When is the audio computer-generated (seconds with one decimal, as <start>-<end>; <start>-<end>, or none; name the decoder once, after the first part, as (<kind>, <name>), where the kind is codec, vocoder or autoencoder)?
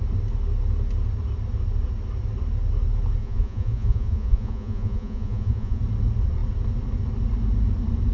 3.2-5.8 (vocoder, Vocos)